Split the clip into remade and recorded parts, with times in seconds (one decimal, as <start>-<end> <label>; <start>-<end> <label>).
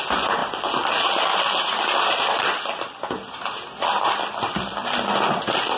0.0-5.8 recorded